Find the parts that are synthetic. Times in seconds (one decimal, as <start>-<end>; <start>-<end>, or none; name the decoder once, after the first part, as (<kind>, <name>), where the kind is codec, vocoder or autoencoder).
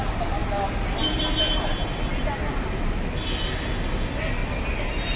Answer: none